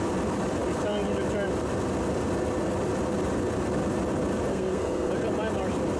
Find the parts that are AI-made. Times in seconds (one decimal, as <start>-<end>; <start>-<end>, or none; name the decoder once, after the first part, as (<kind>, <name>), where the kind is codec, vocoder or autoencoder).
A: 4.5-5.1 (codec, SNAC)